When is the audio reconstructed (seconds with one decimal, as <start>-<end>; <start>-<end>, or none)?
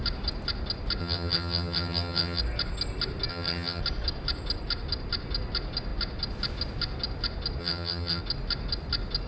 1.0-2.4; 3.3-3.8; 7.6-8.2